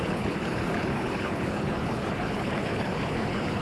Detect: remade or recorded remade